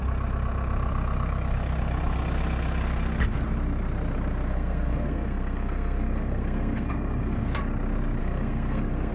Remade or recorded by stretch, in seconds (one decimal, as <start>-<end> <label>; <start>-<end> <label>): 0.0-4.5 recorded; 4.5-7.5 remade; 7.5-8.2 recorded; 8.2-9.1 remade